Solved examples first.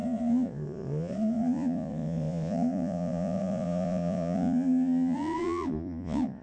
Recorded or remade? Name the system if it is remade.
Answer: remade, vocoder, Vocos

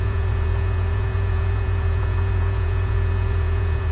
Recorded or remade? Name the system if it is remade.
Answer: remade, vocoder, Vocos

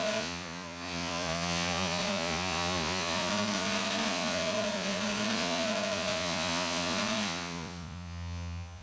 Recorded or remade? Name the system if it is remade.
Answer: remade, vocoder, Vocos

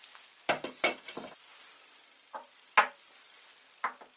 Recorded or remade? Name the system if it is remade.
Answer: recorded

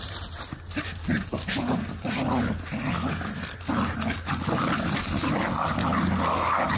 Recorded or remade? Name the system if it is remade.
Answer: recorded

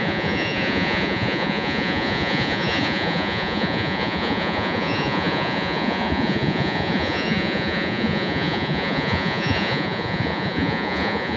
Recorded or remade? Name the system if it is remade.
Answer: remade, vocoder, Vocos